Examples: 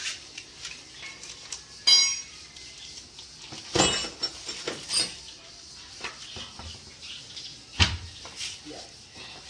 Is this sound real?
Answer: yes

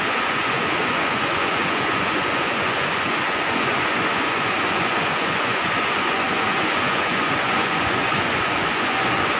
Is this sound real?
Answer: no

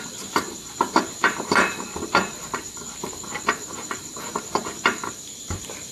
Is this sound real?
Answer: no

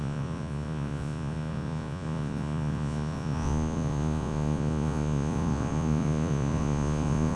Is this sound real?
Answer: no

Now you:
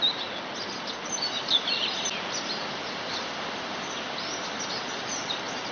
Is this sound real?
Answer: yes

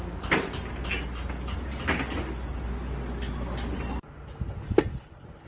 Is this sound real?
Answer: yes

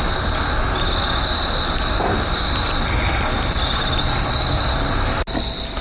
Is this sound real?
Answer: yes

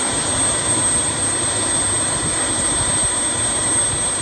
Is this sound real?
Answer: yes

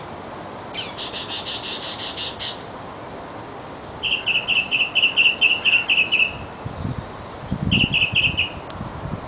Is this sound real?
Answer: yes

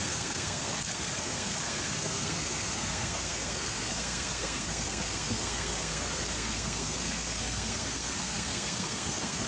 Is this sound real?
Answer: no